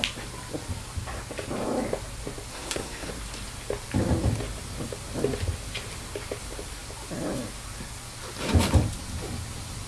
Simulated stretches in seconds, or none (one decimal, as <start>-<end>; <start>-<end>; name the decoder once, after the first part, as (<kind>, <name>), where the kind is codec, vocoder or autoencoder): 2.5-3.1 (codec, SNAC)

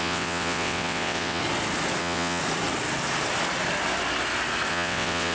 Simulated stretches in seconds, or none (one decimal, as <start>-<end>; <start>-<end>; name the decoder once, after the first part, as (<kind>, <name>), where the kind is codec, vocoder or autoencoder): 0.0-1.4 (vocoder, WaveNeXt); 2.0-2.4; 4.7-5.3

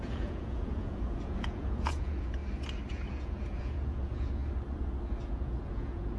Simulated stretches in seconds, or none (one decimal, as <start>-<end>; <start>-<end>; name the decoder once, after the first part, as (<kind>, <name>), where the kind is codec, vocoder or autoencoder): 0.0-2.4 (vocoder, Vocos); 2.9-4.4; 5.2-6.2

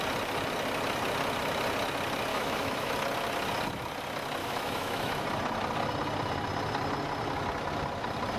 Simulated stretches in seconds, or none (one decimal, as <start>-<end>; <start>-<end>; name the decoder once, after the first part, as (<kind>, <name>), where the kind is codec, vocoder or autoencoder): 2.3-2.9 (autoencoder, DAC-VAE); 4.4-5.2

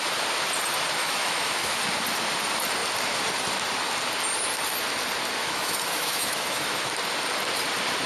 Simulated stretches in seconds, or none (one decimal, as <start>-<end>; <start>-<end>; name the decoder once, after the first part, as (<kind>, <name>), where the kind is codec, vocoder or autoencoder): 1.0-1.8 (autoencoder, DAC-VAE); 5.4-6.9

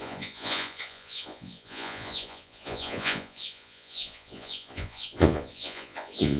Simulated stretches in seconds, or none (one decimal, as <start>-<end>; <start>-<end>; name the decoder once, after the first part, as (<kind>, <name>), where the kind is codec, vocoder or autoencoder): 0.0-6.4 (vocoder, Vocos)

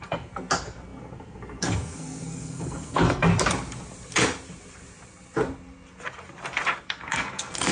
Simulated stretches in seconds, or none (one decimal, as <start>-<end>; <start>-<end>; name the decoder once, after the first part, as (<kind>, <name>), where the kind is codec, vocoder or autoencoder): 0.0-3.3 (codec, SNAC); 6.8-7.7